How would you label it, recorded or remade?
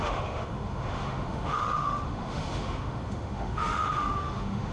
remade